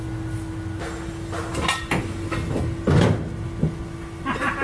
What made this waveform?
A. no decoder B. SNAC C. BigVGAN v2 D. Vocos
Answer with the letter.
A